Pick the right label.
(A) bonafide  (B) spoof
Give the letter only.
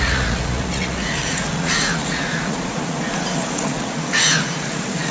B